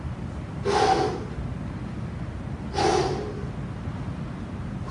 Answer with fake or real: real